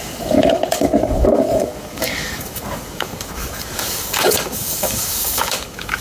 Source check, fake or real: fake